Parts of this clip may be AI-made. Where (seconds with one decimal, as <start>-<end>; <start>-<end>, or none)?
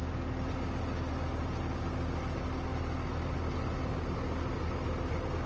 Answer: none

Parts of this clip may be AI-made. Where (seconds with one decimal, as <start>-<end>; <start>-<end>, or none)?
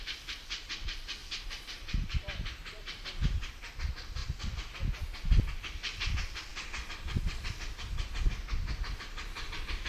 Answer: 1.2-3.7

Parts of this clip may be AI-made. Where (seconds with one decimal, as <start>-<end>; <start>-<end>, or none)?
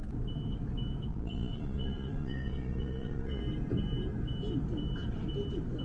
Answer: 1.1-3.4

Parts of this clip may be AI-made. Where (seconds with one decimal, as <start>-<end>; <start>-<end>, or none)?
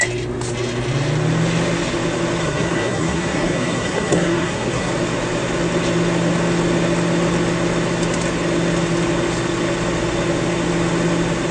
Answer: 2.4-4.9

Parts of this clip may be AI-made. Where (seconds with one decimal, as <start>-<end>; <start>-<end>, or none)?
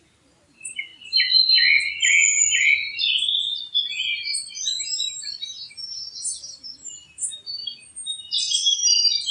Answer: 0.0-0.9; 4.7-9.3